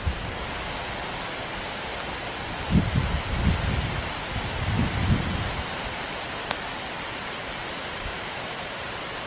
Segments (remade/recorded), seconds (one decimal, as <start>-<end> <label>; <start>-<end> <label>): 0.0-7.6 recorded; 7.6-8.9 remade; 8.9-9.3 recorded

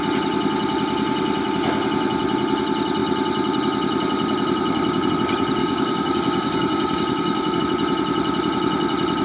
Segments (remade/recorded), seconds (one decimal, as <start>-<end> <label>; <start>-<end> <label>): 0.0-5.6 recorded; 5.6-7.6 remade; 7.6-9.2 recorded

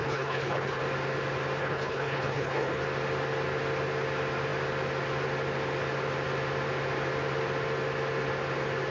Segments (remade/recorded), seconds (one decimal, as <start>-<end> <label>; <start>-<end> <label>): 0.0-0.8 remade; 0.8-1.6 recorded; 1.6-2.8 remade; 2.8-8.9 recorded

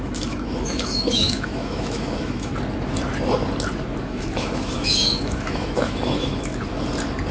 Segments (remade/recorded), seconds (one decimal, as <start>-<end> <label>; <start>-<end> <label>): 0.0-2.5 remade; 2.5-4.0 recorded; 4.0-6.5 remade; 6.5-7.3 recorded

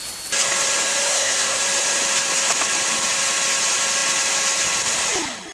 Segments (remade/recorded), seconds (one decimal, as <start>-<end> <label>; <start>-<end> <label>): 0.0-1.1 recorded; 1.1-1.6 remade; 1.6-5.5 recorded

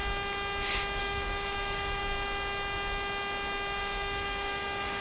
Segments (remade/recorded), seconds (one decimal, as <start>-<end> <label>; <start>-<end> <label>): 0.0-1.0 recorded; 1.0-2.0 remade; 2.0-3.8 recorded; 3.8-5.0 remade

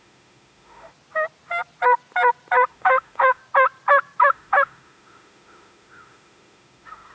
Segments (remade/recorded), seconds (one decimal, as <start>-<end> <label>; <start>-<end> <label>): 0.0-0.9 remade; 0.9-2.7 recorded; 2.7-3.4 remade; 3.4-4.2 recorded; 4.2-7.1 remade

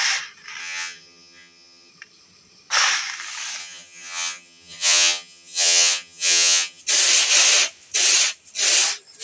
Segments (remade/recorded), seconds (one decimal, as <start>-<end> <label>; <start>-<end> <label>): 0.0-0.6 recorded; 0.6-1.9 remade; 1.9-3.6 recorded; 3.6-6.8 remade; 6.8-9.2 recorded